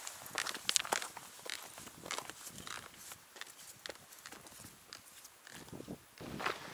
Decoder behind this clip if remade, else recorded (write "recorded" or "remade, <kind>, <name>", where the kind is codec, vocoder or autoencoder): recorded